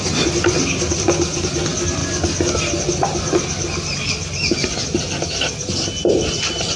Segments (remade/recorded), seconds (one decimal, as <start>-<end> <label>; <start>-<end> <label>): 0.0-6.8 recorded